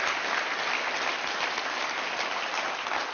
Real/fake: real